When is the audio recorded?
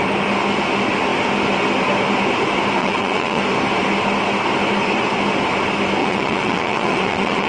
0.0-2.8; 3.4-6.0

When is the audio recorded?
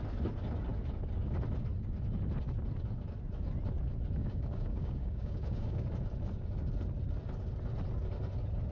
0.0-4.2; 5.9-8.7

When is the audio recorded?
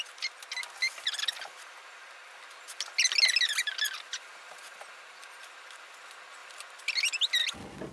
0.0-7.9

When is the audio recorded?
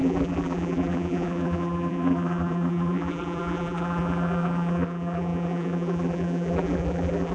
none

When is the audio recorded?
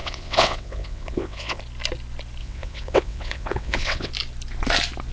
1.6-2.4; 4.1-5.1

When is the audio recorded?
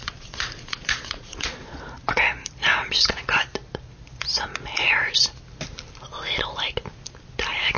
1.8-7.8